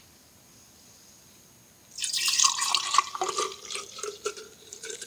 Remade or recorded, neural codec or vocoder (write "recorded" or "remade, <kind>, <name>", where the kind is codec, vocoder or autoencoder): remade, vocoder, BigVGAN v2